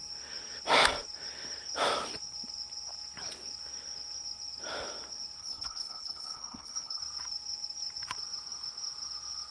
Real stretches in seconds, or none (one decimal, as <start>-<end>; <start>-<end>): 0.0-5.4; 7.0-9.5